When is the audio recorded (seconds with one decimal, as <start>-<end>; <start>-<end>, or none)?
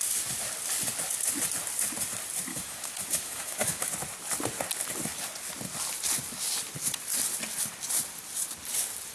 0.0-2.5; 3.9-9.1